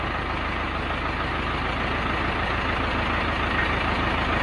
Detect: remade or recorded recorded